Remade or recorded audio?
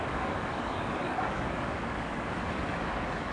remade